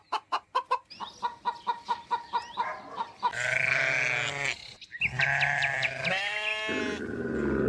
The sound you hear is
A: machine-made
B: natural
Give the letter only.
B